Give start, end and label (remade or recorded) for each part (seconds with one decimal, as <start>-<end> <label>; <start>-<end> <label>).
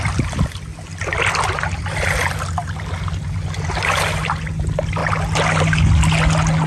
0.0-6.7 recorded